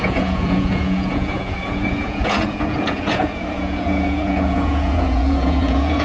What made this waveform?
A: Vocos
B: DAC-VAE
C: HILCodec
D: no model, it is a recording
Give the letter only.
A